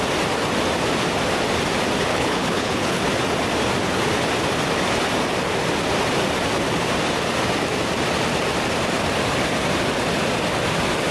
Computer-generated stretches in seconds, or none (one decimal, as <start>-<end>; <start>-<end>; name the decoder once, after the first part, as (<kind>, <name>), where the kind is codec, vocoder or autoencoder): 2.1-3.0 (codec, HILCodec)